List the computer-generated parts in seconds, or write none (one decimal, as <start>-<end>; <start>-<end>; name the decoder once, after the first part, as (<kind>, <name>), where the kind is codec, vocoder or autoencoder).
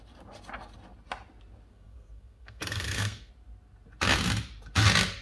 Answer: 1.7-3.3 (codec, SNAC)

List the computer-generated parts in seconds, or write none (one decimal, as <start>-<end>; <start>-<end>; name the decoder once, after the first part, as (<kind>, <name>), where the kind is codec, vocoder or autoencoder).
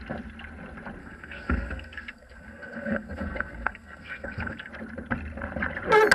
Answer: 1.0-4.7 (codec, SNAC)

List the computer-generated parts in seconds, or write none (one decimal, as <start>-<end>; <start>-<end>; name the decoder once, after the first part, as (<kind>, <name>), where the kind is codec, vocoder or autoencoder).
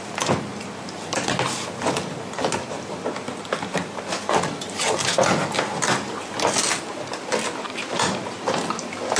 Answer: none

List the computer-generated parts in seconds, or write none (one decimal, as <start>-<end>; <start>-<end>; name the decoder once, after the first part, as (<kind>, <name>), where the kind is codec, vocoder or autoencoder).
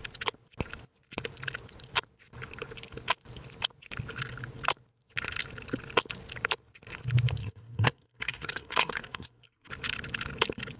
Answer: 7.4-9.7 (codec, SNAC)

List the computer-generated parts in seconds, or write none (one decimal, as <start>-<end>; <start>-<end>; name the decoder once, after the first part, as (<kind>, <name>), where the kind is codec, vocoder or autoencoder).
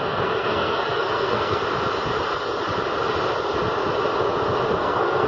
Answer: 0.0-1.6 (codec, SNAC); 4.8-5.3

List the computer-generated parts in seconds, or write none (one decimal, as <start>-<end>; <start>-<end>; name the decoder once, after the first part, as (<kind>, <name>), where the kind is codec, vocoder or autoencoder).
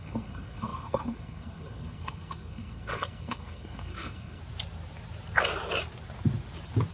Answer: 0.0-4.4 (codec, SNAC)